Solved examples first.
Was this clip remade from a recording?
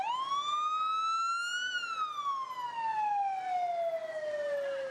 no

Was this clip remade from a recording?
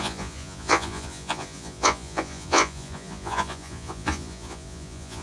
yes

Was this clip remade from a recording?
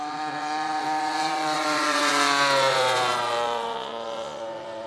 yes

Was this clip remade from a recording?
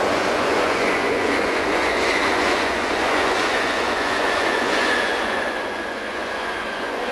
yes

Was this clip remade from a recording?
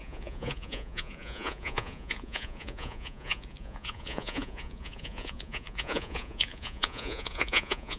yes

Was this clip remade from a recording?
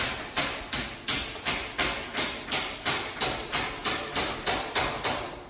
no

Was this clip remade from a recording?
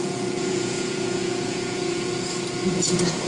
yes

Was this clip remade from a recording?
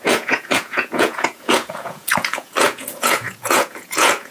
yes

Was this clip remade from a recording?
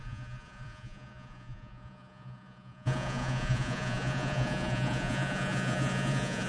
yes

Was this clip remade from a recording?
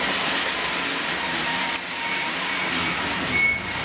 no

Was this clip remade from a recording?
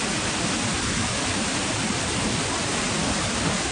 no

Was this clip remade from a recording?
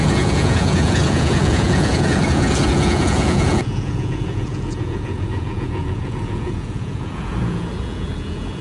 yes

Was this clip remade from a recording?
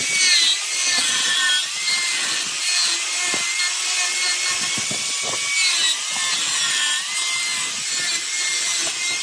no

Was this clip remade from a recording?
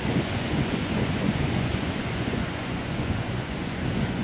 yes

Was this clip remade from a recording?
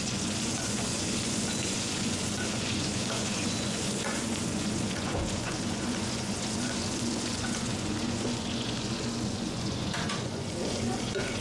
yes